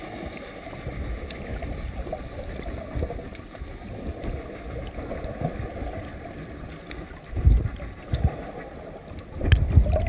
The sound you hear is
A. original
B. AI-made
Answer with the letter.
A